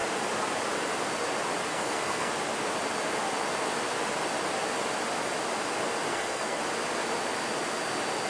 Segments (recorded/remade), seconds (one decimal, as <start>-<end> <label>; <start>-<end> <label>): 0.0-1.7 recorded; 1.7-2.3 remade; 2.3-6.1 recorded; 6.1-6.6 remade; 6.6-8.3 recorded